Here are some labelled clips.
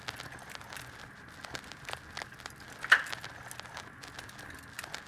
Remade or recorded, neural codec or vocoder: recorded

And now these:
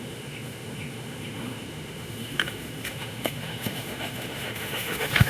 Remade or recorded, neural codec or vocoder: remade, autoencoder, DAC-VAE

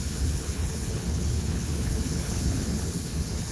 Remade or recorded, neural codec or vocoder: remade, codec, HILCodec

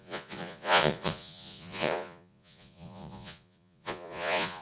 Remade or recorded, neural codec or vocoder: remade, vocoder, Vocos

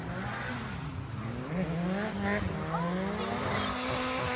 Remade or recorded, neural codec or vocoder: recorded